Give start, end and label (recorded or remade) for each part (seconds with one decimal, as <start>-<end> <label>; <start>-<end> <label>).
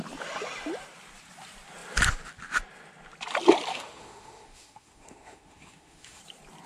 0.0-3.7 recorded; 3.7-6.2 remade; 6.2-6.7 recorded